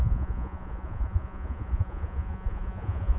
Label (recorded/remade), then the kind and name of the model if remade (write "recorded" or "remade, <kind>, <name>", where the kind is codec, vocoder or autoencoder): remade, vocoder, Vocos